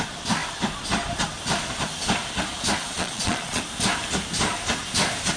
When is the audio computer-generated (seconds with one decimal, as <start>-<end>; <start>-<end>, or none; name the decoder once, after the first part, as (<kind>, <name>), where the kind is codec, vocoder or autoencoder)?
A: 2.8-3.6 (vocoder, Vocos)